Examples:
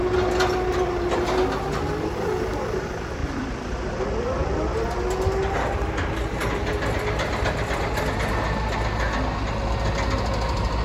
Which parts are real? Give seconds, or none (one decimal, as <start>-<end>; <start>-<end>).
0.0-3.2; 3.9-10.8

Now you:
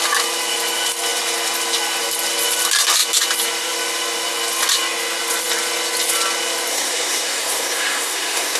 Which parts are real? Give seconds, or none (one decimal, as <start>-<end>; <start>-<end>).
0.0-6.7

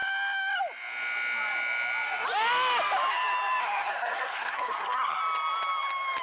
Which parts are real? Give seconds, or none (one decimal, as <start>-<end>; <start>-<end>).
0.0-3.6; 5.2-6.2

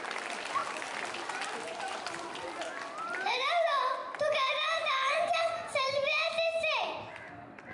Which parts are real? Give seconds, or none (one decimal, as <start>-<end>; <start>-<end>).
0.6-3.0; 6.1-6.8

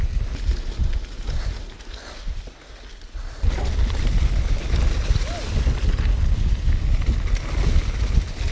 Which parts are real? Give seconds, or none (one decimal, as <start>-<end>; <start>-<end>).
0.0-8.5

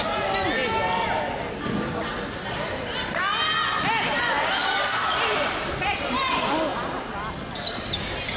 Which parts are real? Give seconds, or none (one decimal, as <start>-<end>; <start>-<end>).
0.0-5.1; 5.7-8.4